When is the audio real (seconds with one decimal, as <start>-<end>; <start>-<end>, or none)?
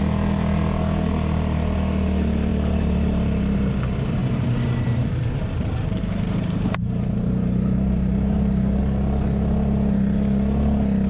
0.0-2.5; 3.7-4.2; 8.8-11.1